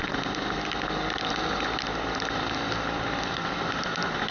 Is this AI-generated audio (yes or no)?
no